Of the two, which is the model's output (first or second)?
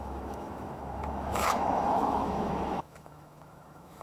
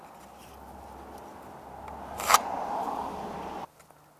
first